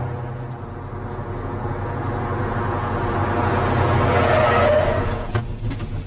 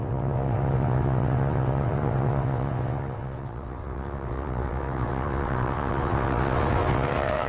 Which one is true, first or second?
first